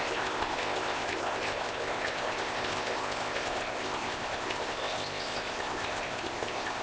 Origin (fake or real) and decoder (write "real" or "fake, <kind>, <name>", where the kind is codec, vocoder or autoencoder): fake, codec, ZipCodec